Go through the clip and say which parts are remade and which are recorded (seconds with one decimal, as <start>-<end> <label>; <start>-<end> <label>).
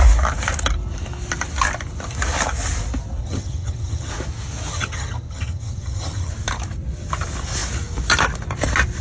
0.0-3.2 recorded; 3.2-4.1 remade; 4.1-4.7 recorded; 4.7-6.3 remade; 6.3-9.0 recorded